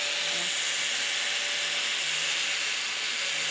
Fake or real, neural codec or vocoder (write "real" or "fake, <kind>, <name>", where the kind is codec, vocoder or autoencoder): real